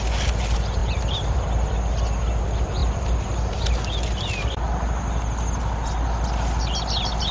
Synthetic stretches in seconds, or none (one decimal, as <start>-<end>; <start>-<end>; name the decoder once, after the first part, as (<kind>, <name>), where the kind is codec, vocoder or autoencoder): none